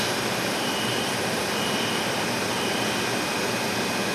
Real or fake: real